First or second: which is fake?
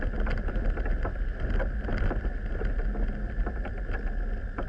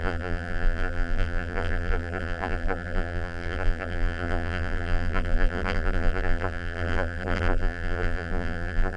second